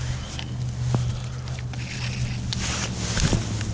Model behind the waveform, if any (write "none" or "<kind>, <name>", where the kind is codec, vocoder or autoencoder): none